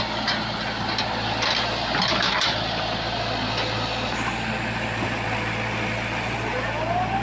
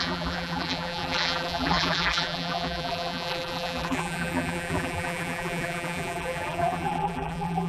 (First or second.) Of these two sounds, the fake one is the second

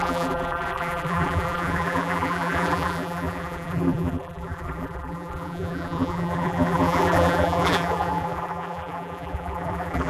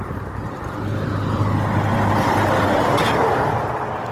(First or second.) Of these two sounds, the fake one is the first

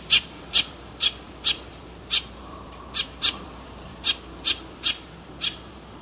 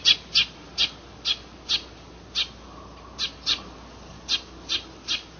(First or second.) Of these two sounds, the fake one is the first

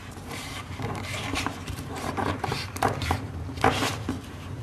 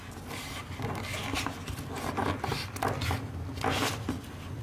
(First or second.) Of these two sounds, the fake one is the first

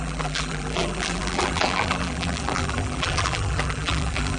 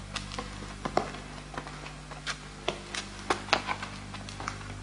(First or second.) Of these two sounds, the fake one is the first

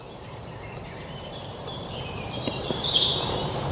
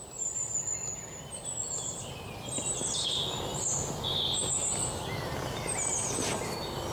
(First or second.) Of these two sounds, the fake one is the first